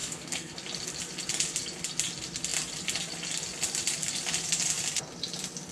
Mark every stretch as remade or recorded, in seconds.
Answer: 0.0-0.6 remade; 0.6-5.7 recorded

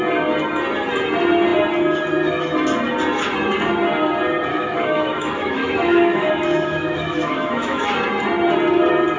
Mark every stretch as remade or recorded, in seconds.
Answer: 0.0-4.5 recorded; 4.5-7.9 remade; 7.9-9.2 recorded

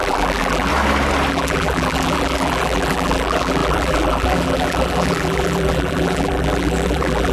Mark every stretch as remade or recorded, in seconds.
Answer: 0.0-0.7 remade; 0.7-1.3 recorded; 1.3-7.3 remade

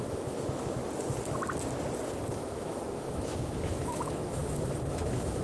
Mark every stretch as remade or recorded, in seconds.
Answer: 0.0-0.8 remade; 0.8-2.3 recorded; 2.3-5.4 remade